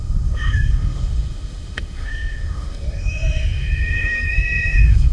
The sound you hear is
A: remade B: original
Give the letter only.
A